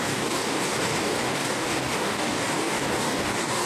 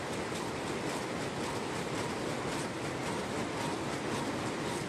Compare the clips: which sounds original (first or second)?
second